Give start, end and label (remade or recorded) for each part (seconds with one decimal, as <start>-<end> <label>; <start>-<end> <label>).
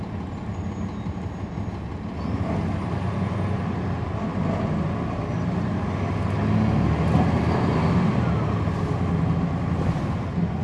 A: 0.0-10.6 recorded